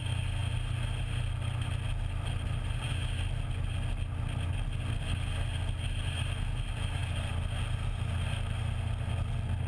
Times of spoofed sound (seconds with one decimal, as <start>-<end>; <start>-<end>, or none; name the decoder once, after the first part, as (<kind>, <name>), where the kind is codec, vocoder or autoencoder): none